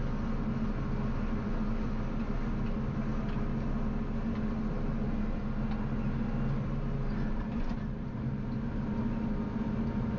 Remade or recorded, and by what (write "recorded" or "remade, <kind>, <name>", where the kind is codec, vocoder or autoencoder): recorded